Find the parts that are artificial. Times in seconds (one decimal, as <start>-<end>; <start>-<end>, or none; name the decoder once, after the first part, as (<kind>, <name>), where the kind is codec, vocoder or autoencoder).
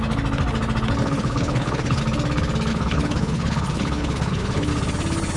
1.0-2.0 (codec, HILCodec); 2.7-4.7